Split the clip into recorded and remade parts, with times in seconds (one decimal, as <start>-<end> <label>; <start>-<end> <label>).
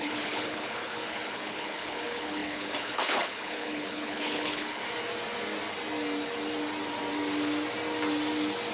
0.0-4.8 remade; 4.8-8.7 recorded